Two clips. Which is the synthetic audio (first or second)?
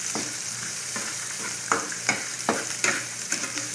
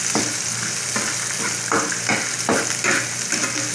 first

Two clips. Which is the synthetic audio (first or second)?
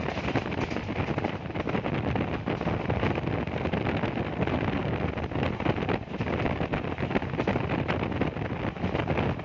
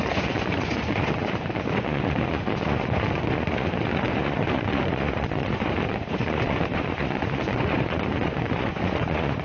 second